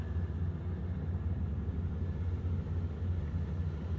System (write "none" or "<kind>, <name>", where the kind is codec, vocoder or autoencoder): none